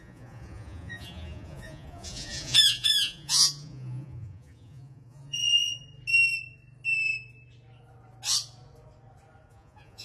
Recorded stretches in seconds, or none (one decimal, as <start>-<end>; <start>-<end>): 5.8-9.5